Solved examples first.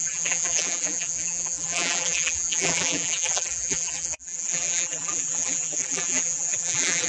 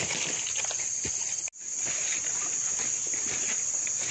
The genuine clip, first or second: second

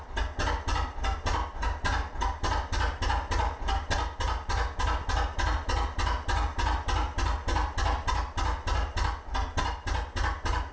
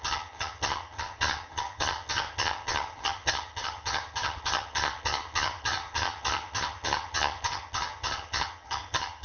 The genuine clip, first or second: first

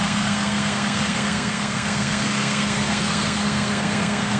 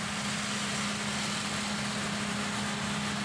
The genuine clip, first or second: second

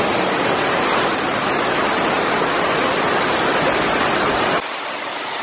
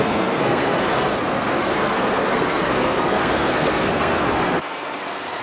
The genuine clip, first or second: first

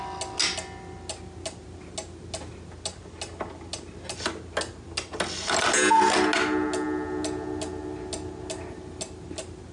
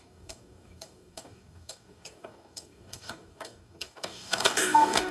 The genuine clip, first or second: first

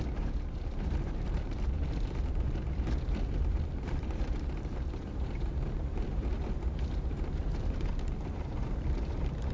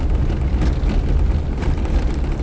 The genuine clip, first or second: second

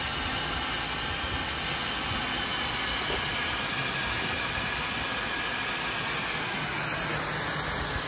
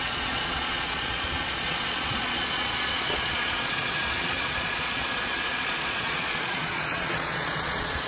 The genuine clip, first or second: first